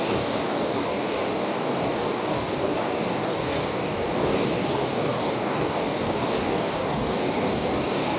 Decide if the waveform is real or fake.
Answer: fake